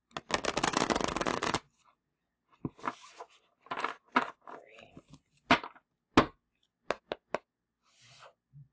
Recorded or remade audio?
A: recorded